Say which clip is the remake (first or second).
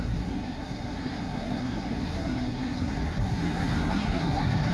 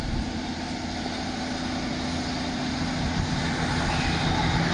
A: first